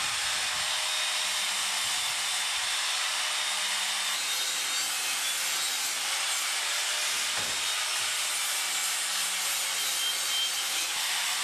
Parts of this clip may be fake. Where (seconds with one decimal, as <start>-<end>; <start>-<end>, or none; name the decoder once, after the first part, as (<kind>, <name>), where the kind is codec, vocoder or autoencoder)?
none